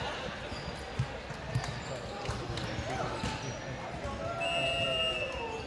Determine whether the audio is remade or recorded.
recorded